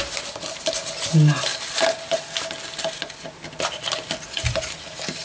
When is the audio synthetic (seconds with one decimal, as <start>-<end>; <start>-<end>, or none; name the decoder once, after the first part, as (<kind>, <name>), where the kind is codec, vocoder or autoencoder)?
none